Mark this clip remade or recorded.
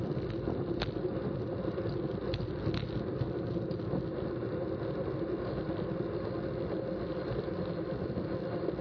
recorded